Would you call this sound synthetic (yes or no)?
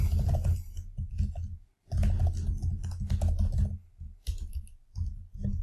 no